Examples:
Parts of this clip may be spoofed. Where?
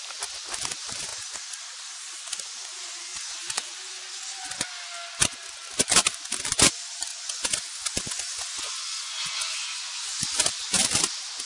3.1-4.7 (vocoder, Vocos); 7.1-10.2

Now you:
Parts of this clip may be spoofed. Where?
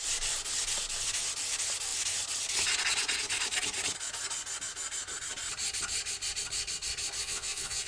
7.2-7.9 (vocoder, Vocos)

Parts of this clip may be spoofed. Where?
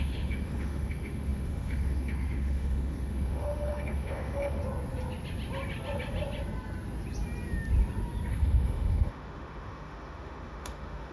0.0-4.6 (autoencoder, DAC-VAE); 8.3-11.1